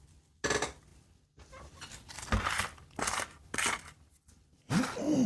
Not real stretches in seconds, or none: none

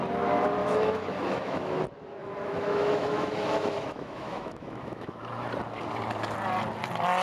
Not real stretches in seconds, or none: 0.6-1.8 (autoencoder, DAC-VAE); 2.2-5.2